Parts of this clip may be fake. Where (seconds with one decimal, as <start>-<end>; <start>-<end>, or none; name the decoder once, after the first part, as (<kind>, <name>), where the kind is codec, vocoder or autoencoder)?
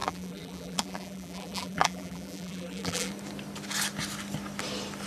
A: 0.0-3.1 (vocoder, BigVGAN v2)